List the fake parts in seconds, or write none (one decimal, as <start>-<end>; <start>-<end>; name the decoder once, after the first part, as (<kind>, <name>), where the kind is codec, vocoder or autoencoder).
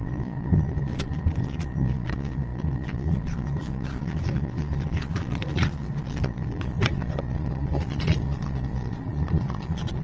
0.0-10.0 (vocoder, Vocos)